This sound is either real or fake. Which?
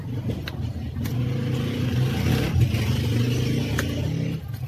real